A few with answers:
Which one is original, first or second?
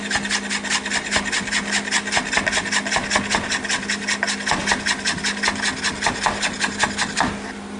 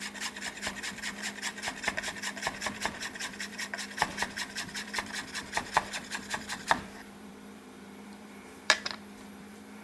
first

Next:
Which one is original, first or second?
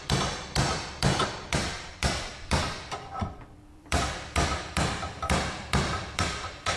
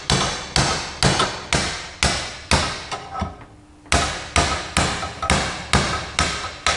second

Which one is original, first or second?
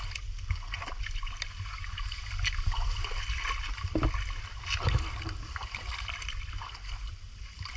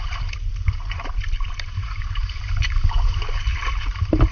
first